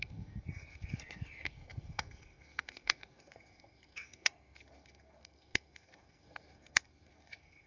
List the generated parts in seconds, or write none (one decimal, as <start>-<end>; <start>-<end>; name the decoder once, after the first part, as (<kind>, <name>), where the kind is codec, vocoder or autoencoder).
0.0-7.7 (codec, SNAC)